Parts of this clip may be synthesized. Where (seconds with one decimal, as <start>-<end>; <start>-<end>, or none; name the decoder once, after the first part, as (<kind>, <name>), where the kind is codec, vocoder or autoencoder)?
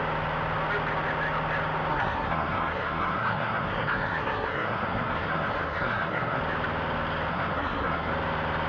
1.9-6.4 (codec, SNAC); 7.3-8.1